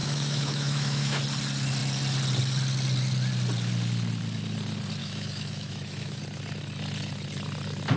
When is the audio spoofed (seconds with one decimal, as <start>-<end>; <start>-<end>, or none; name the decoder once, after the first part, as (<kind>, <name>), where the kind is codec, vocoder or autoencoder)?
0.0-1.2 (autoencoder, DAC-VAE); 5.0-6.2